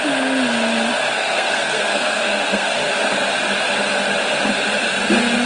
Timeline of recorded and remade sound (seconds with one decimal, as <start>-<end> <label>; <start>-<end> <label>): 0.0-1.1 recorded; 1.1-2.8 remade; 2.8-5.5 recorded